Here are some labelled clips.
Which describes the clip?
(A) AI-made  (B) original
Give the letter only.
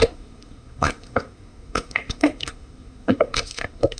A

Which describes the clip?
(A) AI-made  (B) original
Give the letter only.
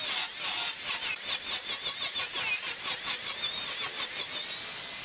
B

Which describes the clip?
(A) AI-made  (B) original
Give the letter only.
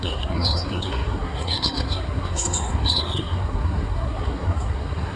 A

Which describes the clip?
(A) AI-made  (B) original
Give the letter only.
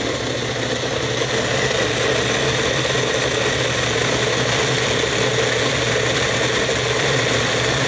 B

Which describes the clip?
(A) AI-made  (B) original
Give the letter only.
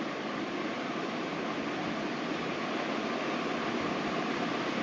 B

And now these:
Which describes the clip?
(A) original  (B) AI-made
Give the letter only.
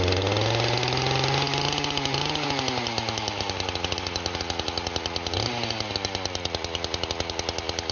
A